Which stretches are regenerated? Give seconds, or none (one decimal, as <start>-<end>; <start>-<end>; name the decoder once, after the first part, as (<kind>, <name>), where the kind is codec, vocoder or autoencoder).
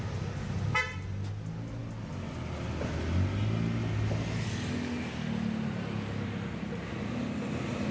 none